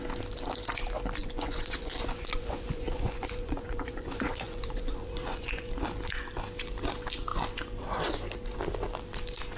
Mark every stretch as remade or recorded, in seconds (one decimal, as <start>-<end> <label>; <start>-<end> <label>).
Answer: 0.0-1.2 recorded; 1.2-5.7 remade; 5.7-9.6 recorded